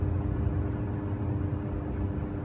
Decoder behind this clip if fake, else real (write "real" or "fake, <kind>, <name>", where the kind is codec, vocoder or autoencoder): real